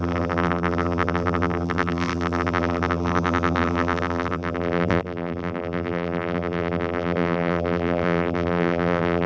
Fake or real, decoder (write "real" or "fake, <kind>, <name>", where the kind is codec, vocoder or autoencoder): fake, vocoder, BigVGAN v2